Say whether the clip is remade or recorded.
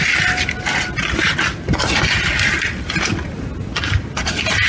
recorded